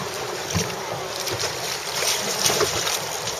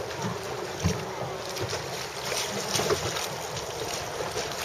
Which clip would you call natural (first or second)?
second